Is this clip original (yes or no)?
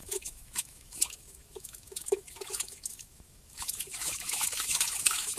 no